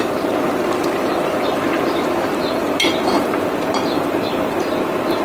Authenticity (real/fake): real